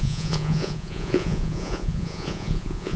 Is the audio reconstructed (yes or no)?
yes